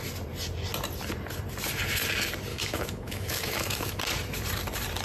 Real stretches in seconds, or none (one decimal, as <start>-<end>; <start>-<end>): 0.0-2.5; 4.0-5.0